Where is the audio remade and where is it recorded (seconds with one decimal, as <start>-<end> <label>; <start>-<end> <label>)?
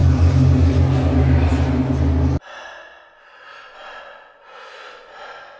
0.0-5.6 recorded